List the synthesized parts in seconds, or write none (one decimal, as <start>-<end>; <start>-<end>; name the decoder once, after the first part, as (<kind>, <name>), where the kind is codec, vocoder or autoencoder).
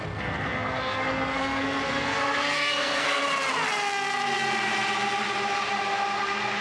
0.0-3.2 (codec, SNAC)